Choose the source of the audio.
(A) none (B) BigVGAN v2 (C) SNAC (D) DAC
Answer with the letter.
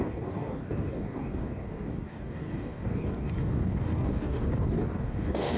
D